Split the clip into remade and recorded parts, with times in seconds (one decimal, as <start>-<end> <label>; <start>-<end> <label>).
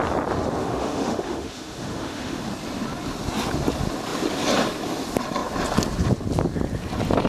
0.0-0.6 recorded; 0.6-2.4 remade; 2.4-7.3 recorded